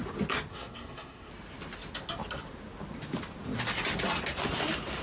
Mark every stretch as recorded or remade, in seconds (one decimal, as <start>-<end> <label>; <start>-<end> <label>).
0.0-0.5 recorded; 0.5-1.3 remade; 1.3-5.0 recorded